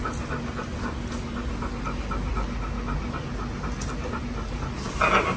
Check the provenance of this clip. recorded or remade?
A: recorded